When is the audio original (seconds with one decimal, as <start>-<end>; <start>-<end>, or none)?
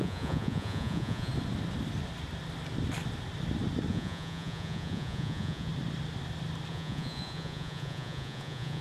1.3-3.9; 5.7-6.7